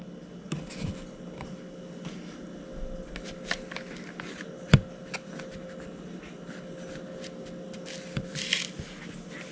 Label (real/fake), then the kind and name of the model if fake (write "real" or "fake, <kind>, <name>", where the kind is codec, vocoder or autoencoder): real